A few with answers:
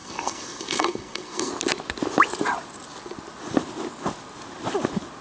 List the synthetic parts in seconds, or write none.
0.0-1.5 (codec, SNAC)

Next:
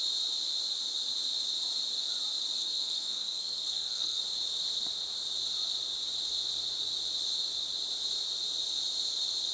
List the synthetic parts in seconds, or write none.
2.6-4.2 (codec, SNAC)

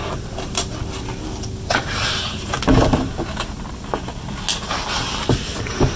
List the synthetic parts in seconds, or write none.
none

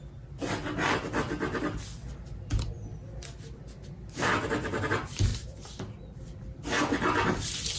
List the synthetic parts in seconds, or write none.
none